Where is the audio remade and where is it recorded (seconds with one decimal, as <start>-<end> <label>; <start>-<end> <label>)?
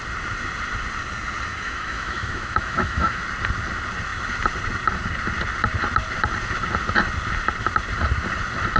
0.0-1.5 recorded; 1.5-3.2 remade; 3.2-8.8 recorded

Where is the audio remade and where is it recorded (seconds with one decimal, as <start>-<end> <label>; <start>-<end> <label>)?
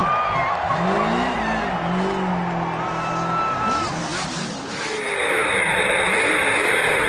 0.0-7.1 recorded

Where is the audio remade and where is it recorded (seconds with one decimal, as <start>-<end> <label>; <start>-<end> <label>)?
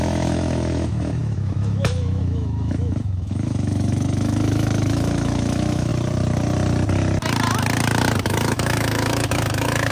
0.0-5.9 remade; 5.9-8.2 recorded; 8.2-9.9 remade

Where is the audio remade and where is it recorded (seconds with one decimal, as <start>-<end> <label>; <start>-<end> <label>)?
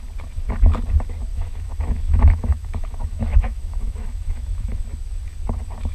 0.0-1.3 recorded; 1.3-4.8 remade; 4.8-5.9 recorded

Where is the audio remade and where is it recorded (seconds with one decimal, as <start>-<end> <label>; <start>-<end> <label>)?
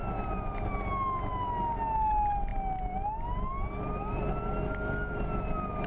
0.0-5.9 recorded